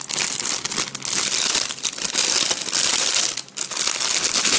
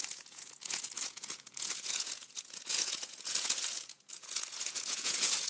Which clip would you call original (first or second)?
first